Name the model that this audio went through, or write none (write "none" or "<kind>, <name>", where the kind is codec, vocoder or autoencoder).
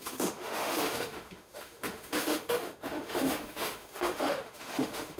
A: autoencoder, DAC-VAE